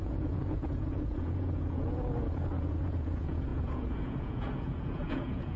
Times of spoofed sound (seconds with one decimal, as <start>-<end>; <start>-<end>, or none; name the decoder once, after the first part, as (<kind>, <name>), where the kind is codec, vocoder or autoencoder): 0.0-5.6 (vocoder, Vocos)